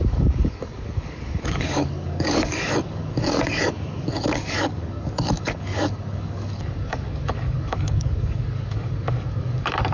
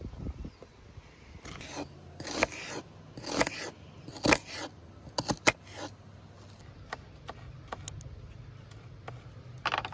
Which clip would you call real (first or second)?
second